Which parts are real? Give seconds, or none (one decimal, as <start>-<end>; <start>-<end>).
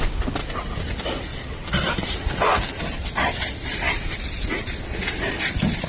0.0-0.4; 0.9-5.9